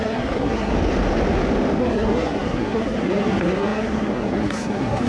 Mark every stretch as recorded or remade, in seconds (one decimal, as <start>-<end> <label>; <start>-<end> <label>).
0.0-0.7 remade; 0.7-1.8 recorded; 1.8-5.1 remade